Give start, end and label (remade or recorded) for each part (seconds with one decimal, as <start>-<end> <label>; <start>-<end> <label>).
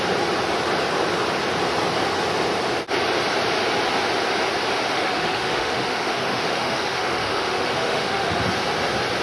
0.0-4.9 recorded; 4.9-8.4 remade; 8.4-9.2 recorded